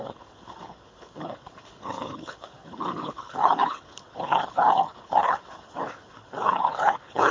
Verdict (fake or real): fake